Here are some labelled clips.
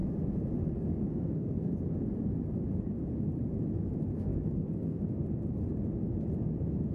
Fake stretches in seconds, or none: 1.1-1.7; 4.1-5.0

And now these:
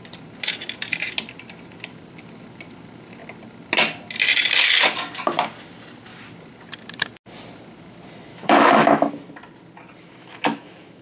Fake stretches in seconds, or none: 8.3-9.1; 10.2-11.0

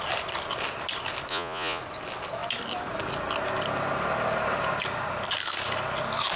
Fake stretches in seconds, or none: 1.3-1.8

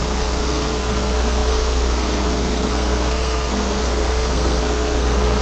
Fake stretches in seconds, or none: 0.0-5.4

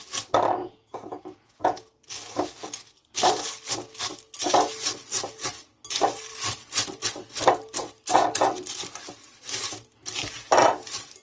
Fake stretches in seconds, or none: 0.6-2.1

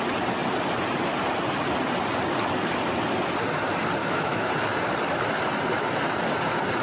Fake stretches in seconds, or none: 4.0-4.5

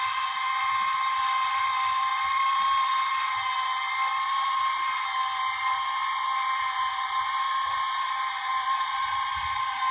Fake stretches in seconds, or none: 0.0-9.9

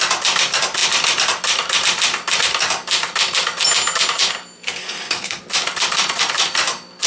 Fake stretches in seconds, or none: 4.8-5.4